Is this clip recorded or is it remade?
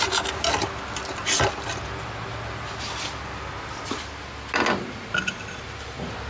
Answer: recorded